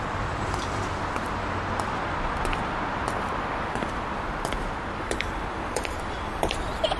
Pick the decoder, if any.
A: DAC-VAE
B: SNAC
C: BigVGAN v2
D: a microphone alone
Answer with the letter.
D